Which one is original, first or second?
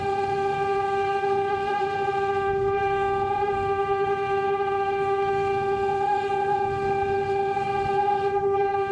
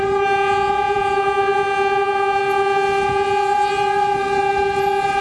second